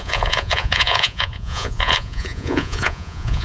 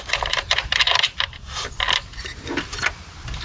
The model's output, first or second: first